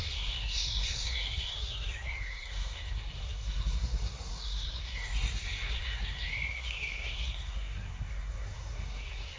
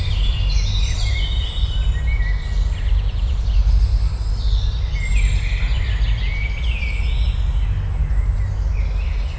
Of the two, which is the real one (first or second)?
second